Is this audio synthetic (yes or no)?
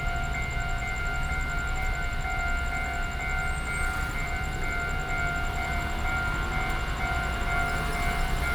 no